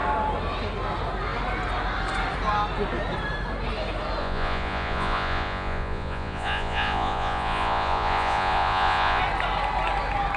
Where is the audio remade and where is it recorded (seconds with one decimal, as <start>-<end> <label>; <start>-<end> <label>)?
0.0-4.2 recorded; 4.2-9.2 remade; 9.2-10.4 recorded